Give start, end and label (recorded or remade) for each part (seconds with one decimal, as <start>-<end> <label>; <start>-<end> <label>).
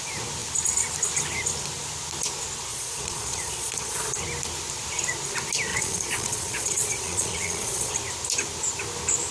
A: 0.0-2.7 recorded; 2.7-4.2 remade; 4.2-5.7 recorded; 5.7-7.9 remade; 7.9-9.3 recorded